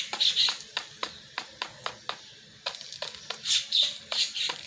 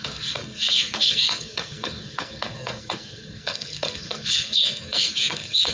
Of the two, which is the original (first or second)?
first